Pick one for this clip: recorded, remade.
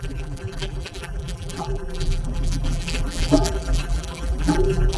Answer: remade